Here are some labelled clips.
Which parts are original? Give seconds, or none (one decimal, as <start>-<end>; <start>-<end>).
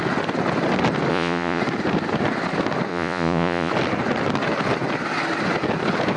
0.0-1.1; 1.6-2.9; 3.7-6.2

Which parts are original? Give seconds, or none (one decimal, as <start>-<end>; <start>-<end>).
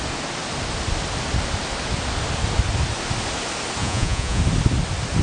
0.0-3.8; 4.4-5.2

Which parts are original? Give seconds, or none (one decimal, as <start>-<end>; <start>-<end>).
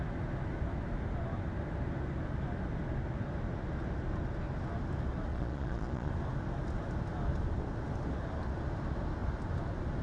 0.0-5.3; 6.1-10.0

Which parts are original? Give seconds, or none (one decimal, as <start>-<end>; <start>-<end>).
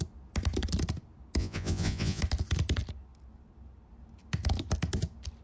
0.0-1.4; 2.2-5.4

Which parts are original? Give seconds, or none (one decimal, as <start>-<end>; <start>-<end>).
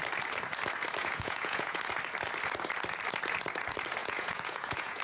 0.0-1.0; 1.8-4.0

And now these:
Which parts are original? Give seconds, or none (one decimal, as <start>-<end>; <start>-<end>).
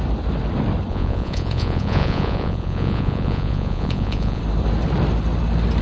0.0-0.9; 4.4-5.8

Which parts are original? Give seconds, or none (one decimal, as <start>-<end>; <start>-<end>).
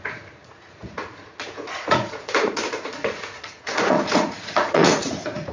none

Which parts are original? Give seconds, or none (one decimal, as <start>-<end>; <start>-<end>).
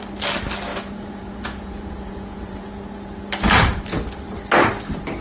0.0-0.7; 2.7-5.2